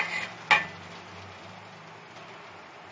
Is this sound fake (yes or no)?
no